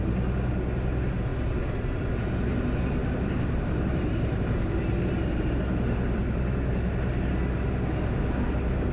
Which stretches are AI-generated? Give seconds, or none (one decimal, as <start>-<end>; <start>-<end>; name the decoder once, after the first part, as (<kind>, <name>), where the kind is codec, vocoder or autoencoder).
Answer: 3.0-5.6 (vocoder, BigVGAN v2)